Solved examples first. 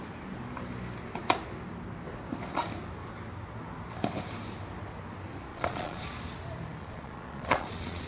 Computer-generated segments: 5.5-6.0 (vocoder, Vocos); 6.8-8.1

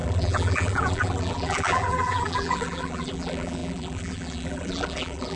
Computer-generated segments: 0.0-5.3 (vocoder, BigVGAN v2)

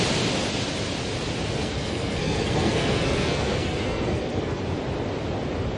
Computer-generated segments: 1.6-4.6 (codec, SNAC)

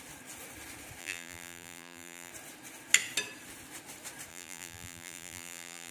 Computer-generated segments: 1.0-2.3 (vocoder, BigVGAN v2); 4.3-5.9

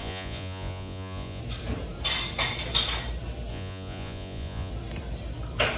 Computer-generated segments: 0.0-1.4 (vocoder, Vocos); 3.5-4.7